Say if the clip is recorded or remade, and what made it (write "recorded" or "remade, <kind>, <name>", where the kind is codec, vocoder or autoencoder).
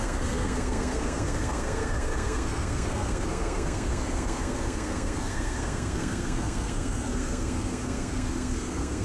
remade, codec, SNAC